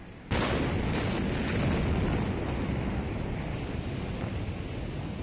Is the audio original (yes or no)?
yes